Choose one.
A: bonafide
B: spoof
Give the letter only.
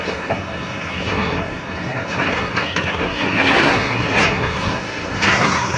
B